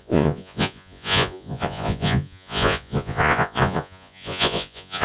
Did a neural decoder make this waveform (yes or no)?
yes